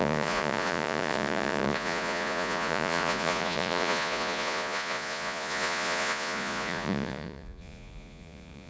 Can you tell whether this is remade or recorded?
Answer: remade